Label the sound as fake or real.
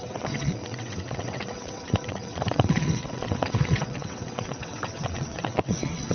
fake